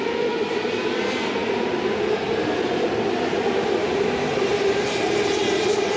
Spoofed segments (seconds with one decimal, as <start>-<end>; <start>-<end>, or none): 3.8-6.0